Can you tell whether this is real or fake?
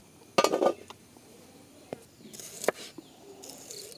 real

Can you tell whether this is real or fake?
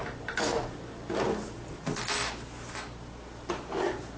real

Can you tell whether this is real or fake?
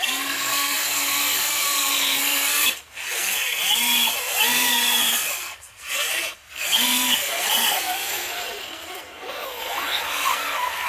fake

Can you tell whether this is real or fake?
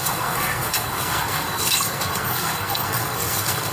fake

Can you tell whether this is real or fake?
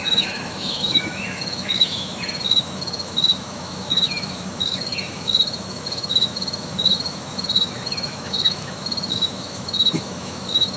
fake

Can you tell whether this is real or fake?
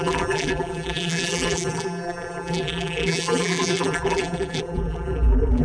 fake